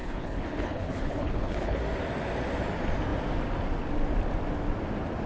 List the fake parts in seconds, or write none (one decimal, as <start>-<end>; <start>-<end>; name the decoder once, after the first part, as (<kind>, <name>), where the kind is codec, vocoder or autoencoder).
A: 0.0-1.8 (codec, HILCodec)